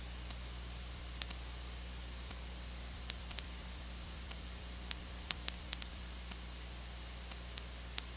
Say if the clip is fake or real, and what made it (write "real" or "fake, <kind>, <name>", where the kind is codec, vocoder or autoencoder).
fake, vocoder, BigVGAN v2